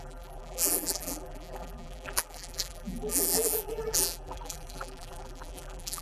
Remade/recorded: remade